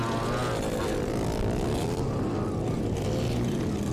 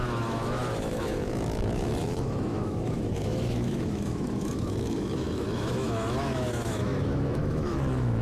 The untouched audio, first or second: first